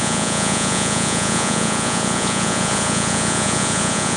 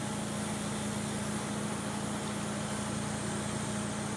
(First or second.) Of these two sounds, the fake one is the first